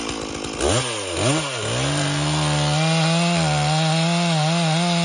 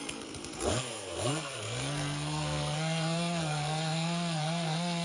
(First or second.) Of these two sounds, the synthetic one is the second